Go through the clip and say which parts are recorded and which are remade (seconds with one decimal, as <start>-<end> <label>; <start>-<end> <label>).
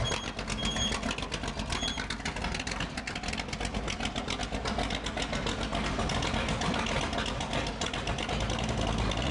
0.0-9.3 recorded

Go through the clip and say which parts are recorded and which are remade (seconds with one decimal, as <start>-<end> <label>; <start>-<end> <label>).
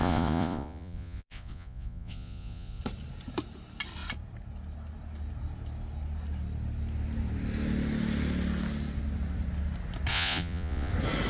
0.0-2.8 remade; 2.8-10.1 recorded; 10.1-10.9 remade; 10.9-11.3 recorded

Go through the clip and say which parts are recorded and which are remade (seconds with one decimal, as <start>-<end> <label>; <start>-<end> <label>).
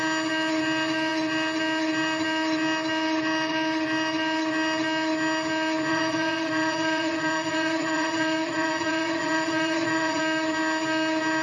0.0-5.9 recorded; 5.9-10.2 remade; 10.2-11.4 recorded